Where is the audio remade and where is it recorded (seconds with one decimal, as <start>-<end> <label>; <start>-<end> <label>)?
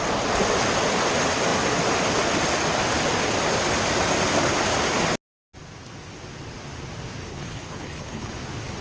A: 0.0-7.3 recorded; 7.3-8.3 remade; 8.3-8.8 recorded